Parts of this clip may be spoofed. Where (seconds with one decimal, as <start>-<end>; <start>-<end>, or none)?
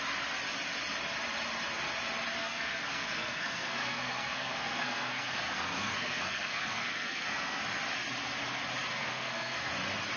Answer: 2.4-7.6; 9.0-9.7